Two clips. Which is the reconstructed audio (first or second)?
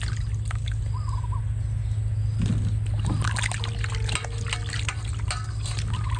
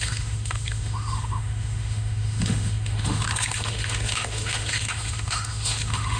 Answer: second